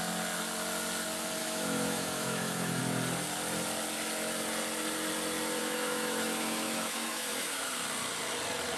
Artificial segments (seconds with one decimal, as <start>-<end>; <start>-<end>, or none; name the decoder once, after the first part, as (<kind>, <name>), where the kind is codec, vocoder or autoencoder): 1.4-2.8 (autoencoder, DAC-VAE); 5.6-7.7

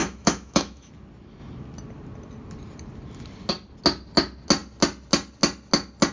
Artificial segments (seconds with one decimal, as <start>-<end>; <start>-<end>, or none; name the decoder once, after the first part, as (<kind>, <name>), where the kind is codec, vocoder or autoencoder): 0.0-0.9 (autoencoder, DAC-VAE)

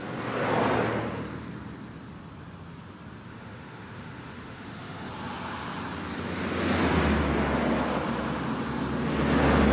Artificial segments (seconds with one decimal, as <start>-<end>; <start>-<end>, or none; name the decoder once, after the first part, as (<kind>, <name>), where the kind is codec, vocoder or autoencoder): 3.3-5.1 (autoencoder, DAC-VAE)

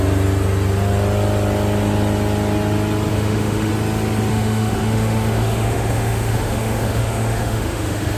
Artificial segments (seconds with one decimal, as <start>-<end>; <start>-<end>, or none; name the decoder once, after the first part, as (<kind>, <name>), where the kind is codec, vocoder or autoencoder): 3.1-3.7 (autoencoder, DAC-VAE); 4.3-8.2

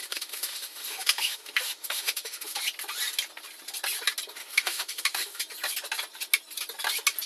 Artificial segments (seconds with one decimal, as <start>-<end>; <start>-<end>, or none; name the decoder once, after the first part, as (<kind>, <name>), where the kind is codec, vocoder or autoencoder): 0.0-2.6 (autoencoder, DAC-VAE); 4.4-5.4

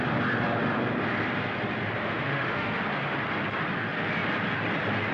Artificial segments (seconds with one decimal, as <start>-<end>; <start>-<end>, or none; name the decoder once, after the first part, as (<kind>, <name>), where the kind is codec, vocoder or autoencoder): 2.0-2.8 (autoencoder, DAC-VAE)